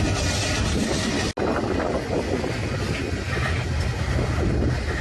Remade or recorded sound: recorded